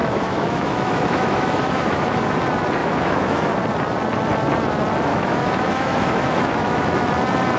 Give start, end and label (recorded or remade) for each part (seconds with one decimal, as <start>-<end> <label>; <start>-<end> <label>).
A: 0.0-2.4 remade; 2.4-2.8 recorded; 2.8-3.5 remade; 3.5-5.1 recorded; 5.1-7.1 remade; 7.1-7.6 recorded